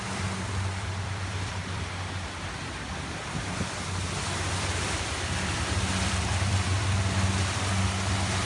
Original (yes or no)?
no